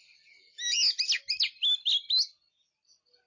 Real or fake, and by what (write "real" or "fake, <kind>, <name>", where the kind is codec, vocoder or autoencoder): real